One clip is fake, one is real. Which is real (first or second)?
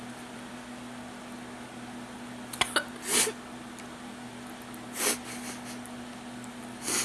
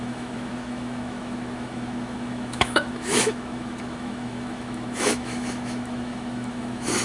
first